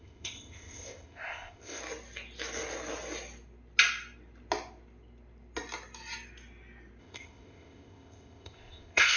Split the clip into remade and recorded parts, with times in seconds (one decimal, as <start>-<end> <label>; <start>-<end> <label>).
0.0-1.8 remade; 1.8-7.0 recorded; 7.0-9.2 remade